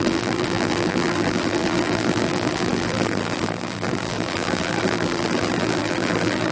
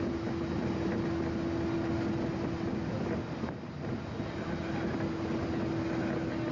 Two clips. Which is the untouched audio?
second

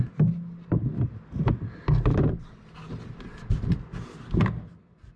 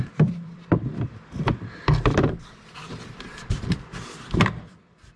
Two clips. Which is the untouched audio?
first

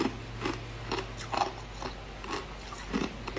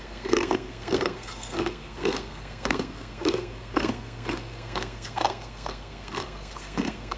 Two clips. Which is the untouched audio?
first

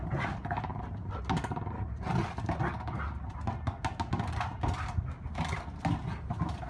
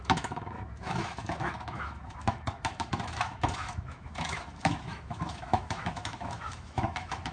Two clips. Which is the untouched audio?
first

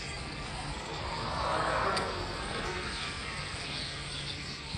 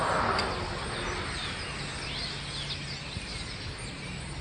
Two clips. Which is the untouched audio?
second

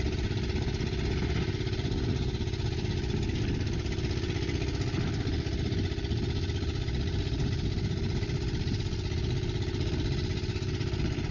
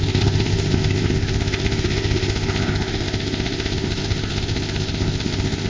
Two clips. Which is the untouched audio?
first